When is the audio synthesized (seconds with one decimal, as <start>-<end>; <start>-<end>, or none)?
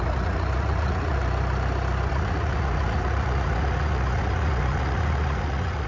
0.0-1.2; 2.1-5.9